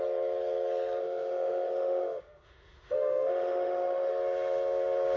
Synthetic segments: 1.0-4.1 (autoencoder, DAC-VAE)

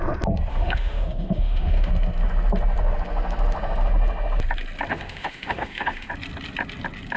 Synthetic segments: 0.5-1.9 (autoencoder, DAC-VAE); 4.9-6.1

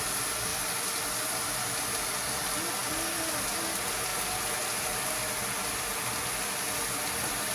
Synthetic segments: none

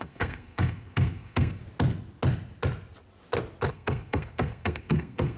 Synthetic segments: 0.0-1.6 (codec, SNAC); 3.7-5.4

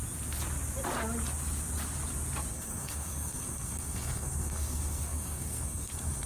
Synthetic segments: 2.5-6.3 (codec, SNAC)

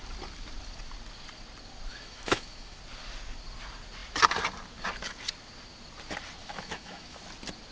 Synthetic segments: 1.9-2.8 (autoencoder, DAC-VAE); 6.4-7.2